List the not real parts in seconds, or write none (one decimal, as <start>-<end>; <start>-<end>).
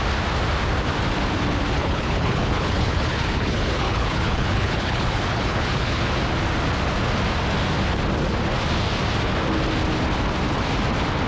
1.8-6.0